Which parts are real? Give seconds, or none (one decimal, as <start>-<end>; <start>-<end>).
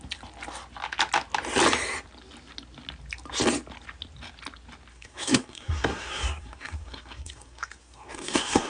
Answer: 0.0-4.9